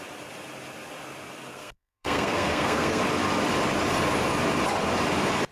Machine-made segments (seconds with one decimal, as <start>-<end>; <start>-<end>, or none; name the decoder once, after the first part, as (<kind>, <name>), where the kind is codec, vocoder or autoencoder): 1.5-3.0 (codec, SNAC)